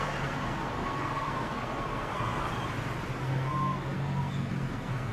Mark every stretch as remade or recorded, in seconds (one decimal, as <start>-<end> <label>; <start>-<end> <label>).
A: 0.0-2.5 remade; 2.5-3.2 recorded; 3.2-5.1 remade